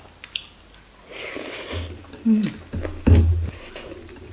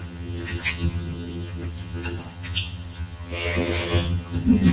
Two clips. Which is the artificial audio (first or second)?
second